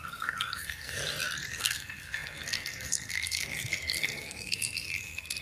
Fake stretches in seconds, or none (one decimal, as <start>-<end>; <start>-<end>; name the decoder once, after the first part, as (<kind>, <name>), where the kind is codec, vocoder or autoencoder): 0.0-1.0 (codec, SNAC); 1.6-5.4